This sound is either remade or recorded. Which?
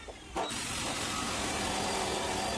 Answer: recorded